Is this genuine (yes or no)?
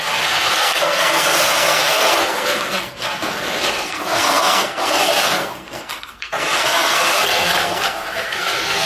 no